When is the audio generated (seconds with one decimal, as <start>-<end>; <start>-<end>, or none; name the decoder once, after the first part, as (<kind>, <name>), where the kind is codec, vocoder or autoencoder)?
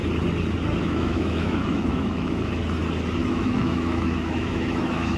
0.8-2.6 (autoencoder, DAC-VAE); 3.2-5.2